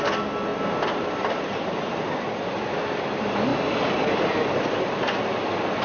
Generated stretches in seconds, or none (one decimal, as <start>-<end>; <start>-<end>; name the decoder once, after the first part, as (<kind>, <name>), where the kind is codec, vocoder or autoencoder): 0.5-1.7 (vocoder, BigVGAN v2)